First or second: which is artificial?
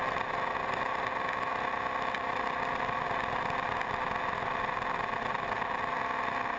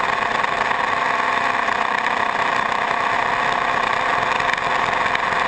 second